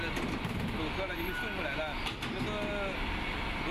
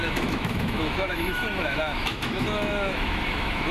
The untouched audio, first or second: first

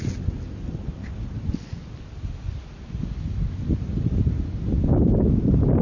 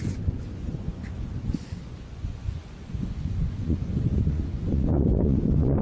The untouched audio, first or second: first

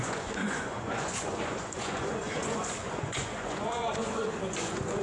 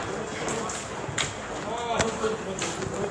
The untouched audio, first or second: second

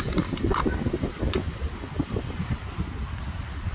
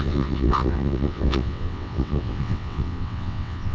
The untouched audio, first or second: first